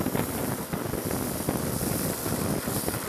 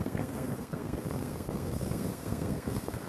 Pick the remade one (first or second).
second